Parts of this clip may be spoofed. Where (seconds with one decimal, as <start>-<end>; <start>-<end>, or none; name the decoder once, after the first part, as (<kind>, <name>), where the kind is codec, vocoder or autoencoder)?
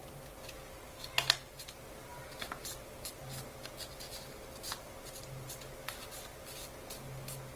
none